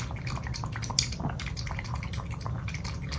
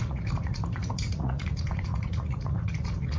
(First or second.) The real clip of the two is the first